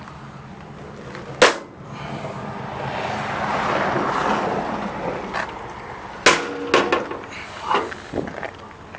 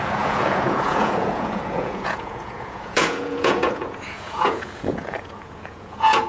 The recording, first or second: first